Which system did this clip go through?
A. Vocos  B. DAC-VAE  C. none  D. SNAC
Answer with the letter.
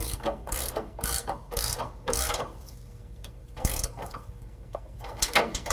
D